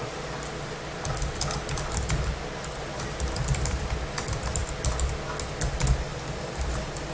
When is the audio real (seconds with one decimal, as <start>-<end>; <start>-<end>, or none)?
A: 0.0-7.1